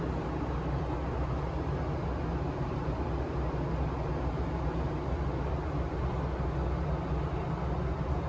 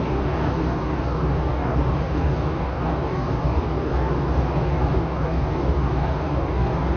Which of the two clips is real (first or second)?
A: first